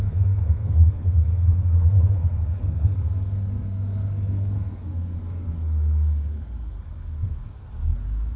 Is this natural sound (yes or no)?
no